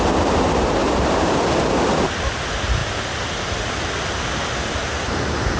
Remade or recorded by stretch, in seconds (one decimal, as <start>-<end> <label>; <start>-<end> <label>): 0.0-0.8 recorded; 0.8-1.4 remade; 1.4-4.8 recorded; 4.8-5.6 remade